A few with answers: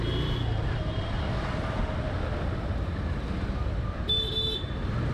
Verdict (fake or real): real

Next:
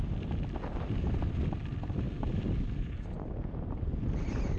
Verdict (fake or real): real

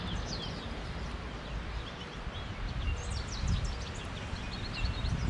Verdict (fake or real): real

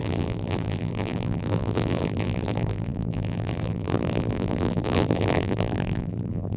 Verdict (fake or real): fake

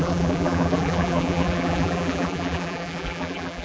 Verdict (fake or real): fake